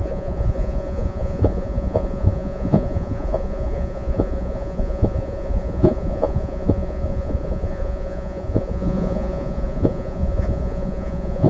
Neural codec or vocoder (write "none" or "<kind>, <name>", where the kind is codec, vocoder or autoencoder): vocoder, Vocos